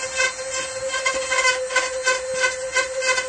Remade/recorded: recorded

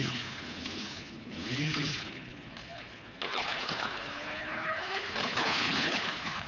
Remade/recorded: remade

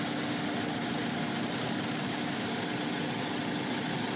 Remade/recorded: recorded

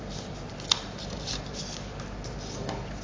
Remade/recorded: recorded